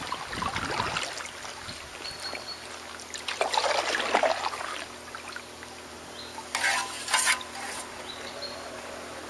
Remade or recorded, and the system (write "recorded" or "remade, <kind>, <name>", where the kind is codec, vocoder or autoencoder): recorded